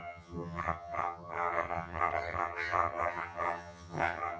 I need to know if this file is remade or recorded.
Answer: remade